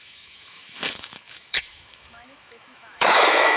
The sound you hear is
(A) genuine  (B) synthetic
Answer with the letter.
B